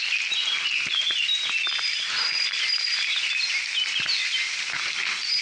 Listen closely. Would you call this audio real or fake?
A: real